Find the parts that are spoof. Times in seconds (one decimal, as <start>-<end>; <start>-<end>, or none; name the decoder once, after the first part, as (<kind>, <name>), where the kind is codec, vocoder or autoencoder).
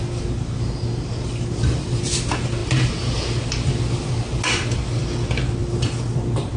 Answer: none